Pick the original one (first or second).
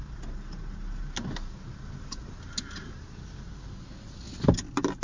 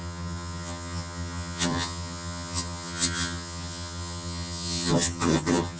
first